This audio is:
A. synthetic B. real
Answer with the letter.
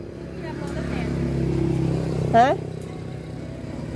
B